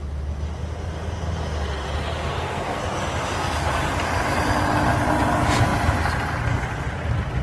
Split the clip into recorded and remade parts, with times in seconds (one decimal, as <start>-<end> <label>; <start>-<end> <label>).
0.0-2.2 recorded; 2.2-2.8 remade; 2.8-7.4 recorded